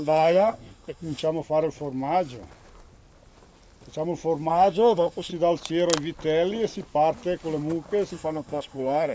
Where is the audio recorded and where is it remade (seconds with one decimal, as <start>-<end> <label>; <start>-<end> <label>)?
0.0-1.2 remade; 1.2-4.5 recorded; 4.5-5.3 remade; 5.3-8.1 recorded; 8.1-9.1 remade